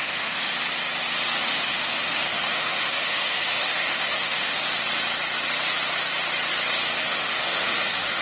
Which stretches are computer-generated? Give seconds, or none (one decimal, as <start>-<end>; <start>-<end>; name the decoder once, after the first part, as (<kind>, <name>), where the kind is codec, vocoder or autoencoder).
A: 0.0-0.5 (autoencoder, DAC-VAE); 1.4-4.6; 7.0-8.2